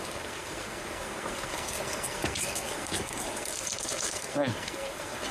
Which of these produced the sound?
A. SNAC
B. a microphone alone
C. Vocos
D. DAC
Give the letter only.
A